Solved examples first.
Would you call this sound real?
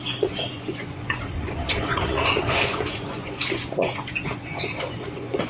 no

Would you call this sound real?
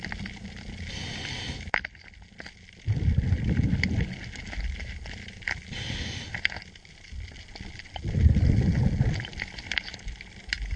yes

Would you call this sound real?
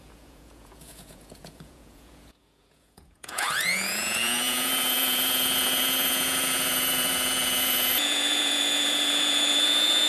no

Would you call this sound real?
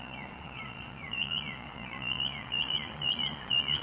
no